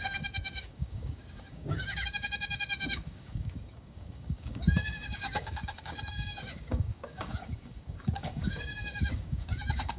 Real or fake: fake